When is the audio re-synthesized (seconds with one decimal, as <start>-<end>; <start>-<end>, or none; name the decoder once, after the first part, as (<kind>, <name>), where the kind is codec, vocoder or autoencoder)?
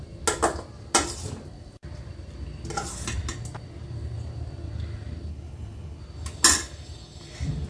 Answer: 5.3-6.0 (codec, HILCodec)